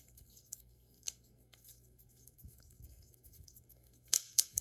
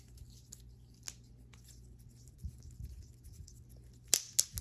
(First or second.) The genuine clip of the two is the second